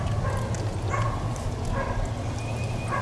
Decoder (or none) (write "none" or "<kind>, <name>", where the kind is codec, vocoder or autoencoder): none